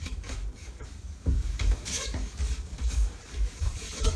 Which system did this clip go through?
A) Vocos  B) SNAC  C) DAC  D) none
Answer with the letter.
C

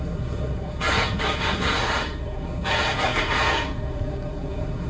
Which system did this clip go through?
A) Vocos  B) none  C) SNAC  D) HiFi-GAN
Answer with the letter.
C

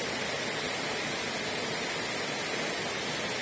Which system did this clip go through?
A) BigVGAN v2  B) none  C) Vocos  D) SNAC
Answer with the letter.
B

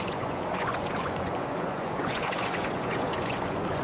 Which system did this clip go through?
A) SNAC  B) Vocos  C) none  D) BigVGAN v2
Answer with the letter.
B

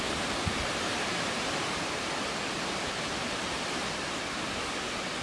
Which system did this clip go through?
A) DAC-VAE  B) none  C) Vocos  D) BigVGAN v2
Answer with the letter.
B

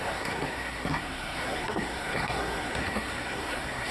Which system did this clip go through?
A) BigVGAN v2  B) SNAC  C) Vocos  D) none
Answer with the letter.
B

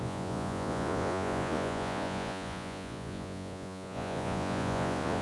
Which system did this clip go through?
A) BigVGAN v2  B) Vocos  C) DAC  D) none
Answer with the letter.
B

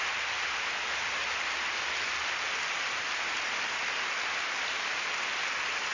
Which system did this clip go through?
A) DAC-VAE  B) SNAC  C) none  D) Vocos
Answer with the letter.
C